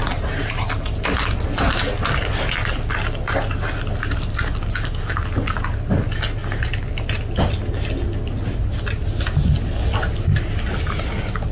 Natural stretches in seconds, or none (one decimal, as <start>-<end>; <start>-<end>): 0.0-11.5